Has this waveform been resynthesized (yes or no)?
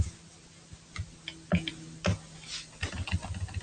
no